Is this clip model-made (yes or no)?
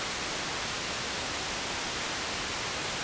no